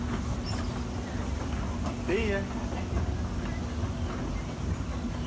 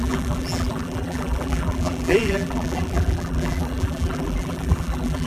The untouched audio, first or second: first